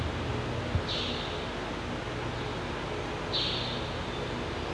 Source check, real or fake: real